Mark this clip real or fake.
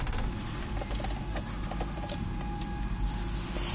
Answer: real